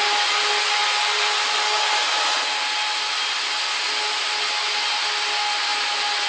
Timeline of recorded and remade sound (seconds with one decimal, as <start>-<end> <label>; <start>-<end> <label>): 0.0-6.3 recorded